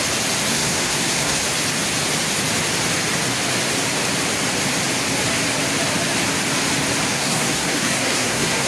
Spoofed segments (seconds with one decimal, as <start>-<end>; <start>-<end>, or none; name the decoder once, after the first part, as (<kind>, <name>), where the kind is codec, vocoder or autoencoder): 0.5-1.4 (codec, SNAC); 7.1-8.7